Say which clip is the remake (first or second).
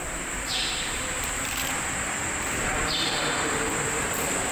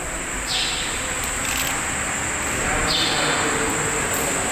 first